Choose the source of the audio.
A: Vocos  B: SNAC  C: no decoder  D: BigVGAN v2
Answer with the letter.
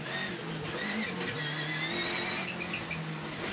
C